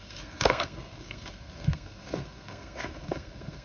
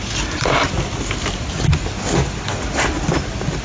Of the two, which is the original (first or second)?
second